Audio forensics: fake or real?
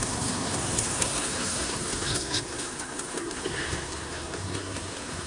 fake